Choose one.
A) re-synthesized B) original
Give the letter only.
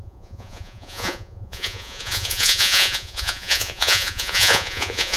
A